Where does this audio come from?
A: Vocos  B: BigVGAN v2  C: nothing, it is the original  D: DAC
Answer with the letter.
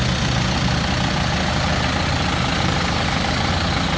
C